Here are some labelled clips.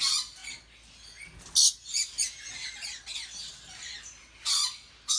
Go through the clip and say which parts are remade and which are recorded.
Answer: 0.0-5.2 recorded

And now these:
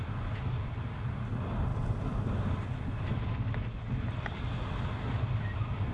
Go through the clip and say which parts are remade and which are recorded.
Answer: 0.0-5.9 recorded

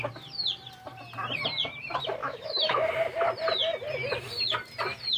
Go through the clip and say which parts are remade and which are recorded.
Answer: 0.0-2.2 recorded; 2.2-2.9 remade; 2.9-5.2 recorded

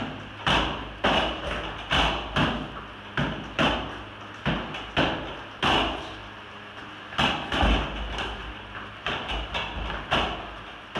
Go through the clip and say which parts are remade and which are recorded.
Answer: 0.0-11.0 recorded